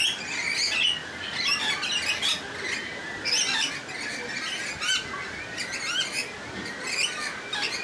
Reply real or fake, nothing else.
real